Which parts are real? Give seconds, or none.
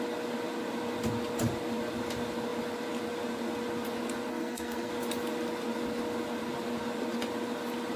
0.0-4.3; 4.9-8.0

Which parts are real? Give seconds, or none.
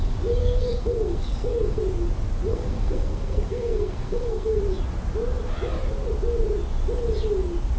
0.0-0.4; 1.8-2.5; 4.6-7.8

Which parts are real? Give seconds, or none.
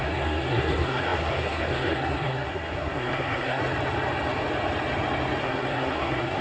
3.6-5.4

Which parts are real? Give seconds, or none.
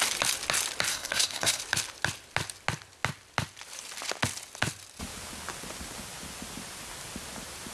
0.0-0.9; 1.6-7.7